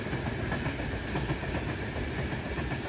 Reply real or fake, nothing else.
real